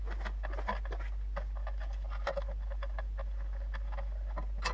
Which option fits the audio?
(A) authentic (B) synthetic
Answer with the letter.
A